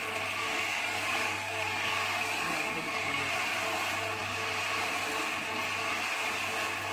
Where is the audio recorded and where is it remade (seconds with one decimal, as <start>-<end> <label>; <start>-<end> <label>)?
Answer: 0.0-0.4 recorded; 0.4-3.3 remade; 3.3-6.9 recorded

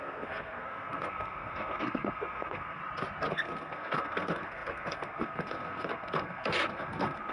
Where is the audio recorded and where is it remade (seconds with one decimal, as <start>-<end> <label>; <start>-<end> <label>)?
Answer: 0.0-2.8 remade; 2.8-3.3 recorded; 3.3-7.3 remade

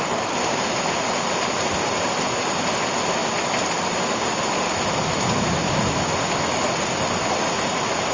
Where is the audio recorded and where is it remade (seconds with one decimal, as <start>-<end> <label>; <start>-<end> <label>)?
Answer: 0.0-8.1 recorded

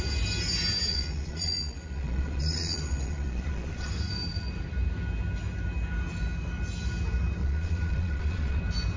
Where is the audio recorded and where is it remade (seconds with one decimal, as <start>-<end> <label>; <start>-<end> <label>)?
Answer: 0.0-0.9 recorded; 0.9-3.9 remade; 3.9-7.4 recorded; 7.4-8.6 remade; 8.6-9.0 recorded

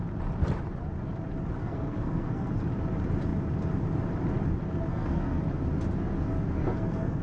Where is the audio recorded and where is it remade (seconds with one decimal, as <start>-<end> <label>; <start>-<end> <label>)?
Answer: 0.0-1.6 recorded; 1.6-2.5 remade; 2.5-4.9 recorded; 4.9-5.4 remade; 5.4-6.6 recorded; 6.6-7.2 remade